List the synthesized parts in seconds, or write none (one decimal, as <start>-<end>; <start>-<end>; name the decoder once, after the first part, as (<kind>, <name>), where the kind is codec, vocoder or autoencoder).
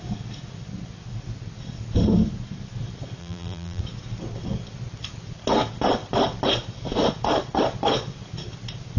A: 3.2-3.8 (vocoder, BigVGAN v2)